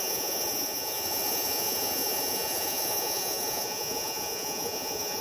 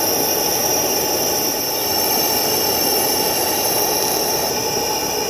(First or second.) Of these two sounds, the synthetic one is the first